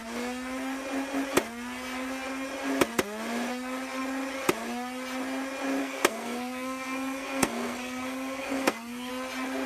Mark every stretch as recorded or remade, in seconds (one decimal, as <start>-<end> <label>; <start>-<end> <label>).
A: 0.0-5.8 recorded; 5.8-9.1 remade; 9.1-9.7 recorded